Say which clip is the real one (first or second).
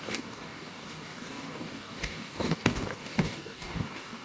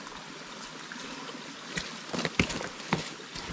second